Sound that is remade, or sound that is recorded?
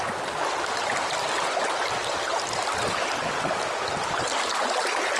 recorded